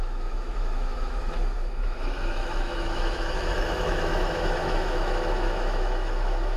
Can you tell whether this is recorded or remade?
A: remade